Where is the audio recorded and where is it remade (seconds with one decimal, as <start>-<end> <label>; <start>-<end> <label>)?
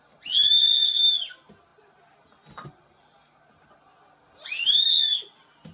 0.0-5.7 recorded